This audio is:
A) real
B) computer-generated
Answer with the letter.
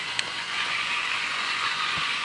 B